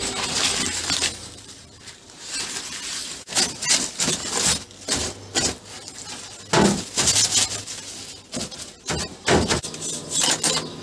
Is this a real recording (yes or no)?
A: yes